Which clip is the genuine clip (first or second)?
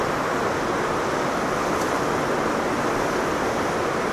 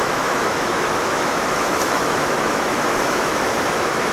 first